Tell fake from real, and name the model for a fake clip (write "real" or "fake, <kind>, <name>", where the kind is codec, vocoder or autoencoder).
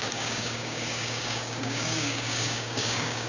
fake, codec, DAC